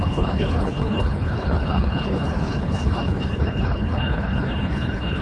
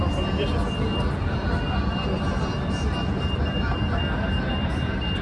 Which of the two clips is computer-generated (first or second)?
first